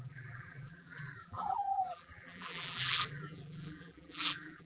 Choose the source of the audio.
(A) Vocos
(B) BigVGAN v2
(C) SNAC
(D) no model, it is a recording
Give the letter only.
B